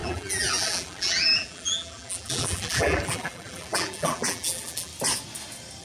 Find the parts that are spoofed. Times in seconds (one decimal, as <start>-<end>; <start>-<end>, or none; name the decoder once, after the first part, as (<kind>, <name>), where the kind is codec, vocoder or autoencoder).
0.0-4.9 (vocoder, BigVGAN v2)

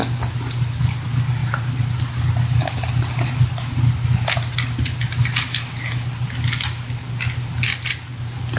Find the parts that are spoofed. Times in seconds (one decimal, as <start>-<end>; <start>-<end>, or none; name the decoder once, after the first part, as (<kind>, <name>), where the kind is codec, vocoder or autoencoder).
1.4-3.3 (vocoder, BigVGAN v2); 7.7-8.2

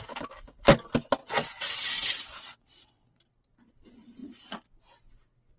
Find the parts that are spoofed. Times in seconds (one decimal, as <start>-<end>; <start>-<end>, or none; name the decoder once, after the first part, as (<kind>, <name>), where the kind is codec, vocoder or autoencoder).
1.2-3.2 (vocoder, WaveNeXt)

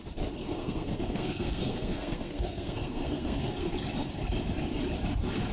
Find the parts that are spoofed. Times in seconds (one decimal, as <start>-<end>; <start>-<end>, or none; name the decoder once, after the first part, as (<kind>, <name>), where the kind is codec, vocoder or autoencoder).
0.4-3.7 (codec, SNAC)

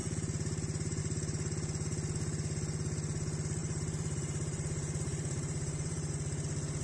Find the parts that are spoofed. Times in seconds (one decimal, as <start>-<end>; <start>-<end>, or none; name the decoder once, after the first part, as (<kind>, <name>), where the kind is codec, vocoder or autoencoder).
3.6-6.1 (vocoder, BigVGAN v2)

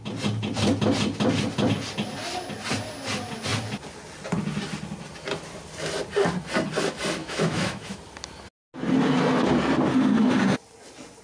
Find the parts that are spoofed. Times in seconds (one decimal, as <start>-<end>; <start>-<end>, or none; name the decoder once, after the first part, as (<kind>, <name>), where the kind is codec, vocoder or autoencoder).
7.2-8.0 (autoencoder, DAC-VAE)

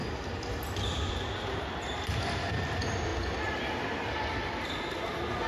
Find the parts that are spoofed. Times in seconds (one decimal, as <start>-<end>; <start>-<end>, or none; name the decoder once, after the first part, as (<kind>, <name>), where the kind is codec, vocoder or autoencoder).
none